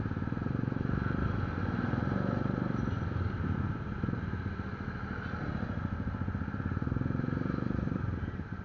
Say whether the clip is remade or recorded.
recorded